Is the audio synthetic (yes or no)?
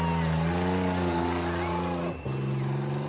no